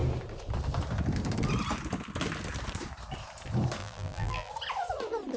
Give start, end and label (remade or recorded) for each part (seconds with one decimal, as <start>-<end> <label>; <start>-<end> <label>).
0.0-3.8 recorded; 3.8-4.5 remade; 4.5-5.4 recorded

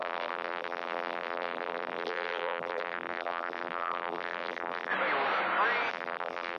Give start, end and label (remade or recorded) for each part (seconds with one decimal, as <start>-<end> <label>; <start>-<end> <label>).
0.0-4.9 remade; 4.9-5.9 recorded; 5.9-6.6 remade

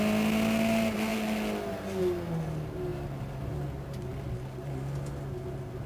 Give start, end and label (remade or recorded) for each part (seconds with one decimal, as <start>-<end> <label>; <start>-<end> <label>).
0.0-5.9 recorded

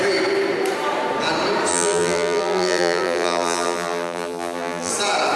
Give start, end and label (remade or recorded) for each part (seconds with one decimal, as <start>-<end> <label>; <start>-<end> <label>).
0.0-1.7 recorded; 1.7-4.9 remade; 4.9-5.4 recorded

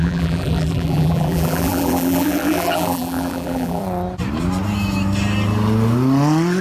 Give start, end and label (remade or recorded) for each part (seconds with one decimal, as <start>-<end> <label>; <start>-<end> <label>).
0.0-3.8 remade; 3.8-6.6 recorded

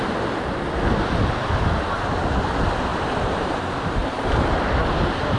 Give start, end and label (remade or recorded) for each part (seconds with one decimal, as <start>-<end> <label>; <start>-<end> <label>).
0.0-2.9 recorded; 2.9-3.6 remade; 3.6-5.4 recorded

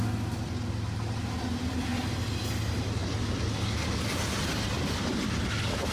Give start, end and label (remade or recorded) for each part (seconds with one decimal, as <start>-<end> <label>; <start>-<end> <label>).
0.0-5.9 recorded

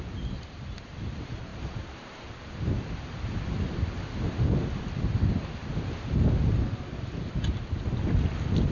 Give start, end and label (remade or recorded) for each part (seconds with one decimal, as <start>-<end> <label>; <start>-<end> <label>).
0.0-1.5 recorded; 1.5-2.4 remade; 2.4-8.7 recorded